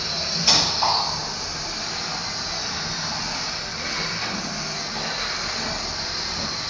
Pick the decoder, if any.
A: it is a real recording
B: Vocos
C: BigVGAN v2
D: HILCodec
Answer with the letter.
A